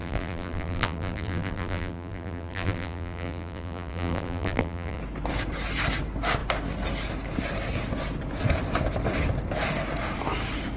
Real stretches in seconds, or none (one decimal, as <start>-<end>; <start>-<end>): 5.0-10.8